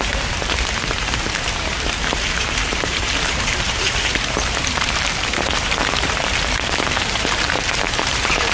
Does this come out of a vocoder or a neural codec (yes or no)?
yes